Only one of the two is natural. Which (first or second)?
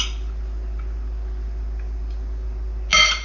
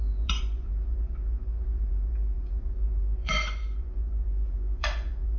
first